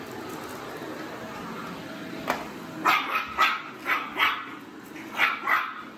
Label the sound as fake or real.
real